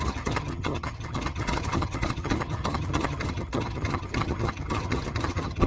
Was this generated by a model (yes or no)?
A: yes